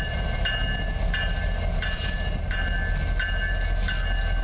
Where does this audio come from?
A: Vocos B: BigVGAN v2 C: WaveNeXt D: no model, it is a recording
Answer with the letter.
D